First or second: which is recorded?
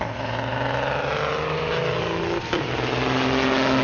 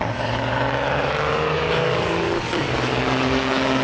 first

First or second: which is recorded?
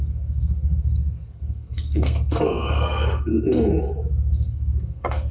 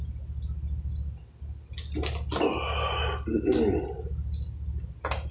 second